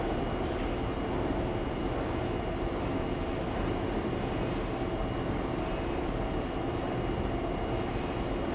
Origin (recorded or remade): recorded